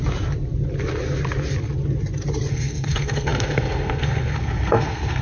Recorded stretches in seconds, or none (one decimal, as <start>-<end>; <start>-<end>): 0.0-2.5